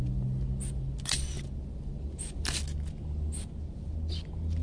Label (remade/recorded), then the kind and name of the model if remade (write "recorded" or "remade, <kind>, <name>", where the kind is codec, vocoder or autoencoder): recorded